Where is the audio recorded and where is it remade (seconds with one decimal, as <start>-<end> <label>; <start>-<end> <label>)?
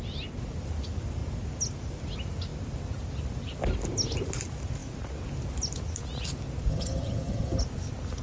0.0-6.7 recorded; 6.7-7.6 remade; 7.6-8.2 recorded